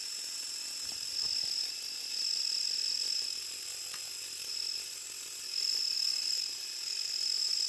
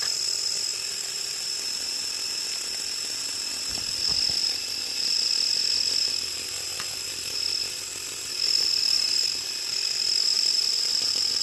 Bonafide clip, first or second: first